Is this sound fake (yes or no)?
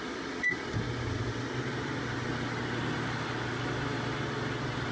no